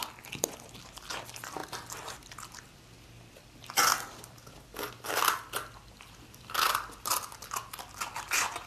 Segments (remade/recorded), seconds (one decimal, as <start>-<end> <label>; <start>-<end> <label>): 0.0-8.7 recorded